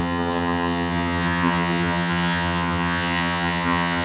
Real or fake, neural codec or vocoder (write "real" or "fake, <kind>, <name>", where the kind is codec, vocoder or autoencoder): fake, vocoder, HiFi-GAN